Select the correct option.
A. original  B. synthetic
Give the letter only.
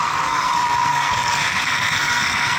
B